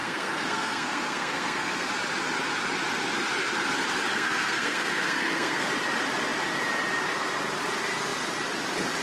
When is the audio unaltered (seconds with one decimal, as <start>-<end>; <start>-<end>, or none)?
1.9-4.1; 5.7-9.0